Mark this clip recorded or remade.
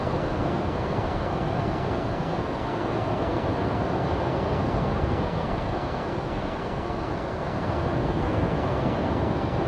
remade